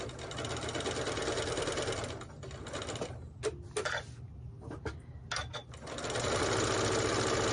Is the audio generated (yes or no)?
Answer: no